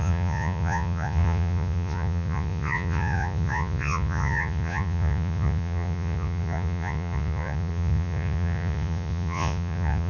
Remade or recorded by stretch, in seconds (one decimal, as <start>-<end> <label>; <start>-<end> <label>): 0.0-10.1 remade